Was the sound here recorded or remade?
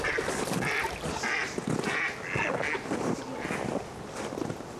recorded